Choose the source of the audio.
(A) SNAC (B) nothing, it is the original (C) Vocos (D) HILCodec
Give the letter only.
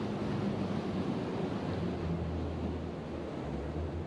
B